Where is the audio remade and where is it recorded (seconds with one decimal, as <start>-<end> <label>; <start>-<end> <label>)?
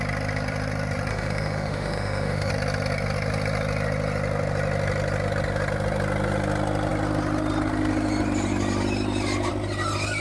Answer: 0.0-1.1 recorded; 1.1-2.5 remade; 2.5-10.2 recorded